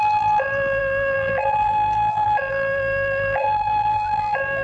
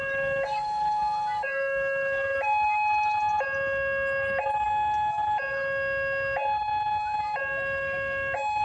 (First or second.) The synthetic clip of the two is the first